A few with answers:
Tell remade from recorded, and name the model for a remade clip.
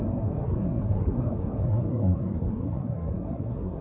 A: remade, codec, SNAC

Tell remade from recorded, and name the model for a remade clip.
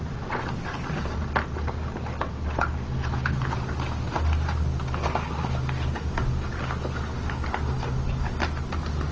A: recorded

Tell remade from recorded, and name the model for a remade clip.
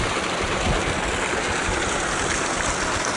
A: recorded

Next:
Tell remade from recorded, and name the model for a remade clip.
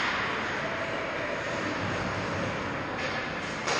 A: recorded